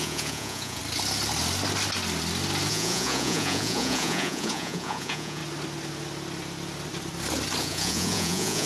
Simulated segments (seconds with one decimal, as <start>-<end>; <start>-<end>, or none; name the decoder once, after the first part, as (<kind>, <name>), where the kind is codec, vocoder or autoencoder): 0.0-0.8 (vocoder, Vocos); 2.7-5.4; 7.6-8.7

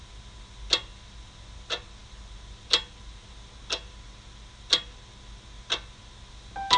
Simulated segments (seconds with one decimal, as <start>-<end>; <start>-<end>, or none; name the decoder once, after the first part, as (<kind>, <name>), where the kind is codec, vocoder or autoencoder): none

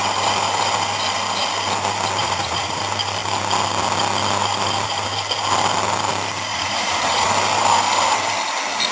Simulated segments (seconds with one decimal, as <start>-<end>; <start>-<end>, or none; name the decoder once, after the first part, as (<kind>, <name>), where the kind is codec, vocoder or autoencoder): 2.2-2.8 (vocoder, Vocos); 6.5-7.3

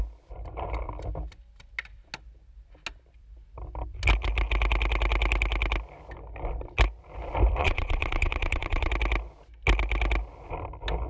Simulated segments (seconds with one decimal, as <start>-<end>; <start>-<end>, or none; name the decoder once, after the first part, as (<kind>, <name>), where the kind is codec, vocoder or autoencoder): 7.6-8.9 (vocoder, Vocos)

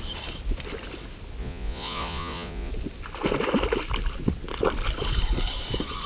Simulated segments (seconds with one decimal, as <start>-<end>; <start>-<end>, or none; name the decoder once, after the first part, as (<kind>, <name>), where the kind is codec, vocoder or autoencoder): 1.4-2.7 (vocoder, Vocos)

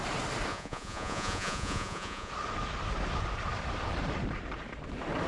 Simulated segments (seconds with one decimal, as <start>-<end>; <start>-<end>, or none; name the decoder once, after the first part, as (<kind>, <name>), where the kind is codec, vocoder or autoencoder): 0.5-2.3 (vocoder, Vocos)

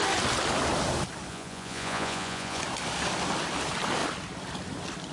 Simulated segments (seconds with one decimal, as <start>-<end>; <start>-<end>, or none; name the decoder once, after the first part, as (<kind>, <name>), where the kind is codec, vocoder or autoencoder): 1.3-2.6 (vocoder, Vocos)